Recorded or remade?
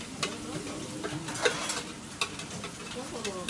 recorded